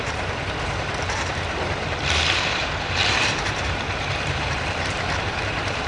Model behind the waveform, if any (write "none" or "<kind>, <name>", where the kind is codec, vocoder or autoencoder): vocoder, BigVGAN v2